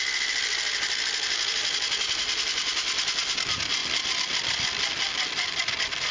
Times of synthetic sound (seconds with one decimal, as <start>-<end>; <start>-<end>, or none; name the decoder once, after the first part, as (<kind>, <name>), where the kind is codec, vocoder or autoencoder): none